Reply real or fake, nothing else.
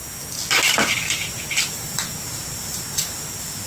real